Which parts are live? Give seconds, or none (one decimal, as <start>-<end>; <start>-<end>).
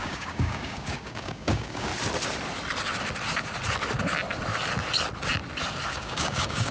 1.9-5.9